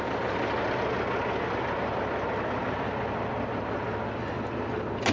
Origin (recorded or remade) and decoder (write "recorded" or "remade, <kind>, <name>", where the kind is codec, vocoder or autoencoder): recorded